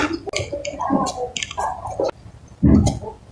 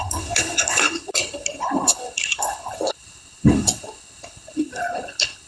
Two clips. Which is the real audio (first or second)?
first